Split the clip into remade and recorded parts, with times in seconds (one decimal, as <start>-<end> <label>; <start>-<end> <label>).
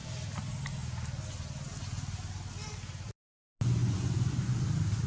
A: 0.0-3.8 recorded; 3.8-4.6 remade; 4.6-5.1 recorded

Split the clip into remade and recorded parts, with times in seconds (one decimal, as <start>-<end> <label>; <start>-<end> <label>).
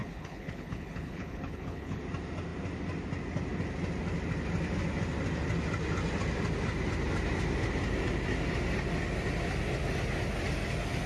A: 0.0-2.0 remade; 2.0-11.1 recorded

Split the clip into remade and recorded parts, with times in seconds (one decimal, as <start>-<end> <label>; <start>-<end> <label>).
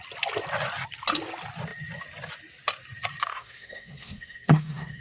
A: 0.0-3.3 recorded; 3.3-5.0 remade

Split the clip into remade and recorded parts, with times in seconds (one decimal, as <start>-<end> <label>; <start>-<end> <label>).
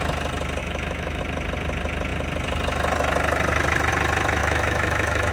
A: 0.0-0.6 recorded; 0.6-1.2 remade; 1.2-4.4 recorded; 4.4-5.3 remade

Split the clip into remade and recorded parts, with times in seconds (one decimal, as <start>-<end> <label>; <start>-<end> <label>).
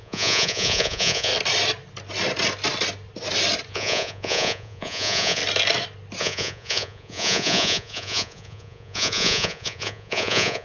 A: 0.0-1.3 remade; 1.3-3.7 recorded; 3.7-5.4 remade; 5.4-6.2 recorded; 6.2-10.6 remade